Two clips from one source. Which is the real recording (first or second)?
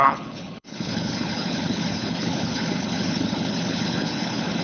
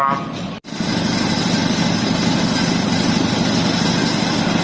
second